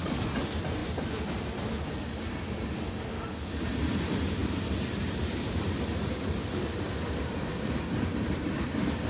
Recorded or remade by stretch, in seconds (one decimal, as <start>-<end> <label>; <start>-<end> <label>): 0.0-0.8 remade; 0.8-4.0 recorded; 4.0-9.1 remade